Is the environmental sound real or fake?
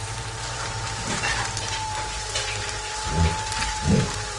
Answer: fake